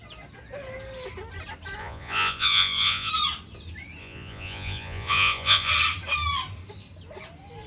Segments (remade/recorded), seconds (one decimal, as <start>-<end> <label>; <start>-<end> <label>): 0.0-1.8 recorded; 1.8-3.1 remade; 3.1-4.0 recorded; 4.0-5.7 remade; 5.7-7.7 recorded